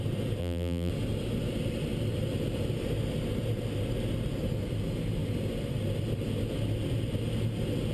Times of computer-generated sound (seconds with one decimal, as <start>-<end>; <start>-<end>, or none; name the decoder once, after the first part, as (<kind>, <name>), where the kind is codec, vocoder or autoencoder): 0.4-0.9 (vocoder, BigVGAN v2)